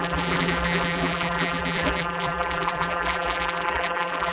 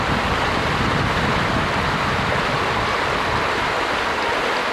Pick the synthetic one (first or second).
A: first